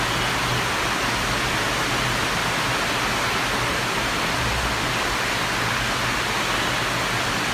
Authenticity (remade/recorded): recorded